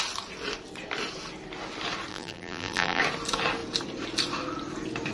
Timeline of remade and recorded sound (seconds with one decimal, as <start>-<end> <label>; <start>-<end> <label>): 0.0-2.1 recorded; 2.1-3.0 remade; 3.0-5.1 recorded